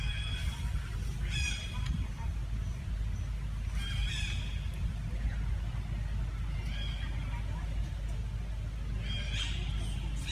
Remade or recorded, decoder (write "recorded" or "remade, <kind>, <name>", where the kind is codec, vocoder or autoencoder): recorded